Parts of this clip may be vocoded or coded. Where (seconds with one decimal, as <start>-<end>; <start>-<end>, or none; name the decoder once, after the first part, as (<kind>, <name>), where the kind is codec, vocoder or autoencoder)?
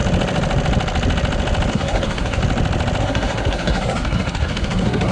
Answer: 1.7-2.4 (codec, SNAC); 3.0-5.1